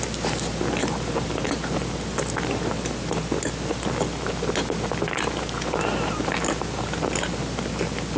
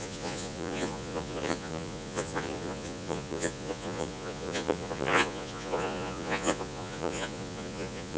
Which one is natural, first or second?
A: first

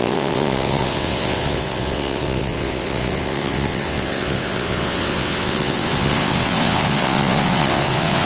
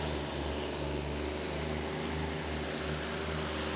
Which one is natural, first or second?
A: second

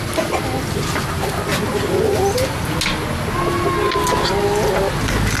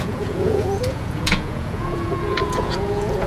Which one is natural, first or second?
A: first